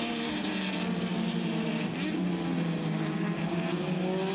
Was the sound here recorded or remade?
recorded